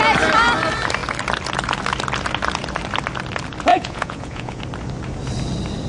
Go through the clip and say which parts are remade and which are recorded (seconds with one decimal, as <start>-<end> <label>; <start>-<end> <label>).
0.0-3.7 recorded; 3.7-4.6 remade; 4.6-5.9 recorded

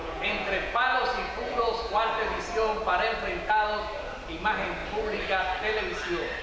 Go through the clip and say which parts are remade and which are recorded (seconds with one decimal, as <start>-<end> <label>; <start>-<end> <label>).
0.0-1.9 remade; 1.9-6.4 recorded

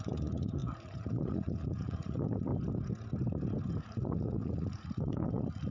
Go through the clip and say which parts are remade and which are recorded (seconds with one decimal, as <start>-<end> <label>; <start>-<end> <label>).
0.0-2.5 remade; 2.5-3.8 recorded; 3.8-5.7 remade